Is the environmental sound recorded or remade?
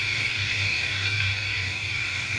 remade